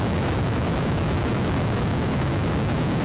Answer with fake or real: fake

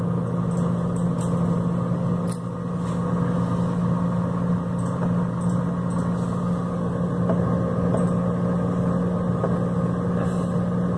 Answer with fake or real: real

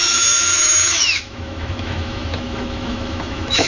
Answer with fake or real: fake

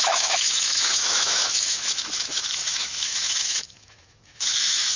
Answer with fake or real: fake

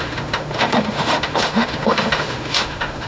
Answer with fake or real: fake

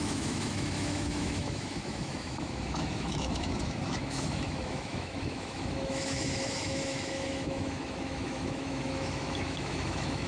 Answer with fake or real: fake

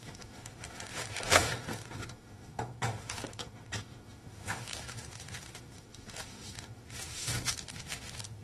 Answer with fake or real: fake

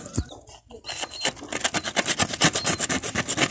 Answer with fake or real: real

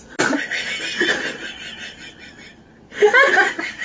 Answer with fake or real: real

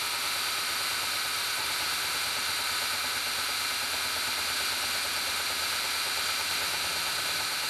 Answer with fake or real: real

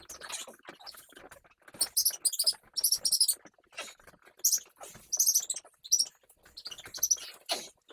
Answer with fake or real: real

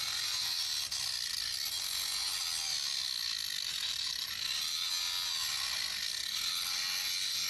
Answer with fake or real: real